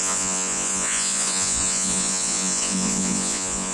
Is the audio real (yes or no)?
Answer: no